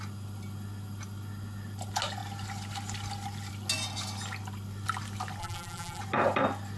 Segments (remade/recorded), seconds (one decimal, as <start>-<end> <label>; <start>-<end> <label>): 0.0-5.4 recorded; 5.4-6.0 remade; 6.0-6.8 recorded